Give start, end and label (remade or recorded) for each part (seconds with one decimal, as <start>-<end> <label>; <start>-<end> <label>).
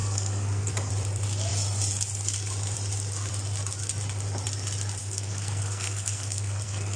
0.0-0.9 remade; 0.9-5.0 recorded; 5.0-7.0 remade